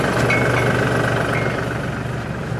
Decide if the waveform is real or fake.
real